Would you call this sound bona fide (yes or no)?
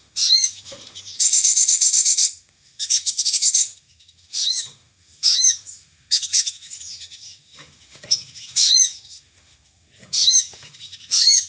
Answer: no